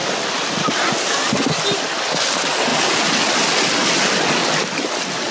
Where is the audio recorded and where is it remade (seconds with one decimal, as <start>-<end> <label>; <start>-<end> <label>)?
0.0-5.3 recorded